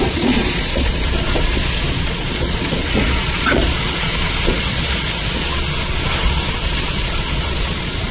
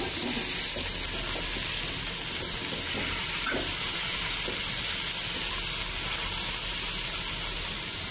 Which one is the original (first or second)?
second